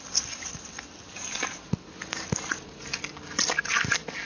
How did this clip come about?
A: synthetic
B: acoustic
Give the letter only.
B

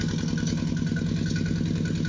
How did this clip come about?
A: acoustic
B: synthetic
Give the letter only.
A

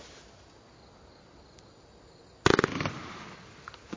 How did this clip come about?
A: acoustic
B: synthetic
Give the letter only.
A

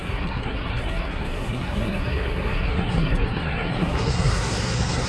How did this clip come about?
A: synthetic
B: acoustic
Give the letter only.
A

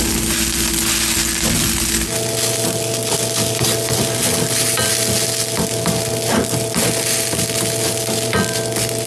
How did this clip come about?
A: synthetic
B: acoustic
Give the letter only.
B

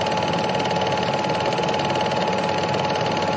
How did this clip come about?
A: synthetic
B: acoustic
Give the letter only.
B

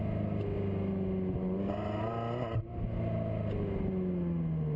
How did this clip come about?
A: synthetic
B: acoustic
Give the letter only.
B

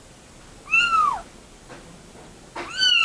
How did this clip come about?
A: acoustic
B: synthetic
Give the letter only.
A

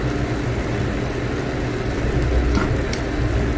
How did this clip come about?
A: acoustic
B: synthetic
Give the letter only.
A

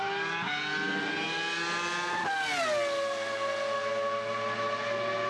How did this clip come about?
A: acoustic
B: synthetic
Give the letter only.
A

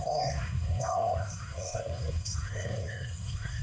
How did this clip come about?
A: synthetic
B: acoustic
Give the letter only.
A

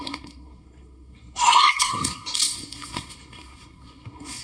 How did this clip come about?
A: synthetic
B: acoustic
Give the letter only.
A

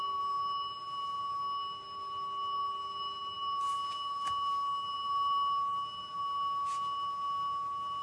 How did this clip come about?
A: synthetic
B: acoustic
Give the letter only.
B